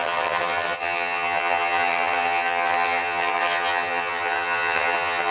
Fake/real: fake